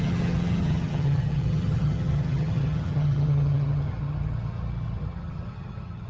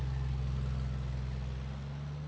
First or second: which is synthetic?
first